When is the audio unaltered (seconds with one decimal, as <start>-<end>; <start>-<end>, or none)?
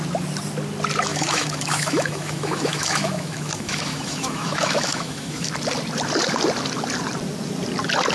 0.0-1.1; 5.5-8.1